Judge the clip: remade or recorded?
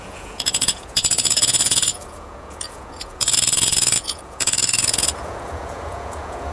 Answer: remade